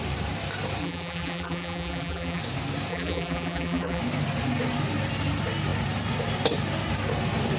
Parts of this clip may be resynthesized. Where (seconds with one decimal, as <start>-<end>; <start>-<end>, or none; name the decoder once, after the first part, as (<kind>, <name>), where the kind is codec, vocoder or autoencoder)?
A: 0.8-2.4 (vocoder, BigVGAN v2); 2.9-4.0

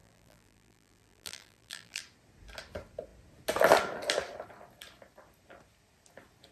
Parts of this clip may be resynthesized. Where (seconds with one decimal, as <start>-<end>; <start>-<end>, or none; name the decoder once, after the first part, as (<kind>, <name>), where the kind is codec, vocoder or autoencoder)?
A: 0.0-2.0 (vocoder, BigVGAN v2)

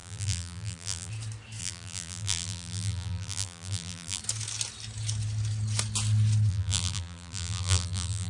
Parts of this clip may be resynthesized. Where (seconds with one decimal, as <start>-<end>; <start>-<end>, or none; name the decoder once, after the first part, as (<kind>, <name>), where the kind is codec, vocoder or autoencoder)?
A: 0.0-1.1 (vocoder, BigVGAN v2); 1.6-4.2; 6.5-8.3

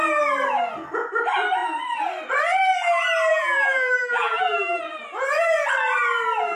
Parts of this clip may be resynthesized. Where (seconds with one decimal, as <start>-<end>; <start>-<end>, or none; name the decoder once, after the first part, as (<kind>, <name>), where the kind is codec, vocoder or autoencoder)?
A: 3.3-4.8 (vocoder, BigVGAN v2)